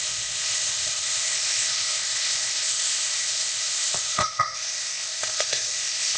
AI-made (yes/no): yes